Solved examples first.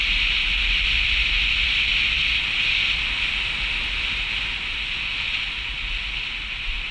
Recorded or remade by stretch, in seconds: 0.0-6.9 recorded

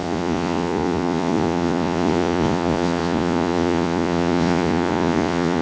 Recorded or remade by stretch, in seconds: 0.0-5.6 remade

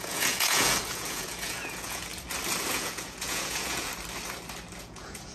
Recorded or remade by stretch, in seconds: 0.0-2.1 remade; 2.1-2.6 recorded; 2.6-3.9 remade; 3.9-4.8 recorded; 4.8-5.3 remade

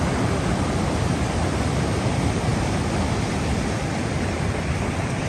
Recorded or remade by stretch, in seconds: 0.0-2.5 remade; 2.5-4.0 recorded; 4.0-5.3 remade

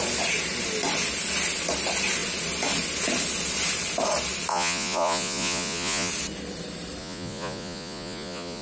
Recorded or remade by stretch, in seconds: 0.0-4.5 recorded; 4.5-6.1 remade; 6.1-7.0 recorded; 7.0-8.6 remade